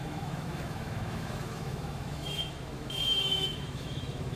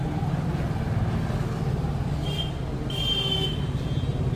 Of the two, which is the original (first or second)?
second